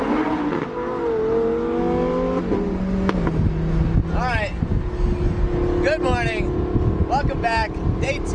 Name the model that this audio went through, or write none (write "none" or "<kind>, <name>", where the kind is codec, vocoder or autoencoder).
none